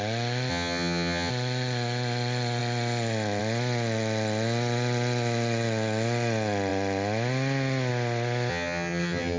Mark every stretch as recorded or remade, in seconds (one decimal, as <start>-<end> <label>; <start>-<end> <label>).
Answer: 0.0-0.5 recorded; 0.5-1.3 remade; 1.3-8.5 recorded; 8.5-9.4 remade